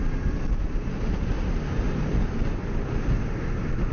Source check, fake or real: real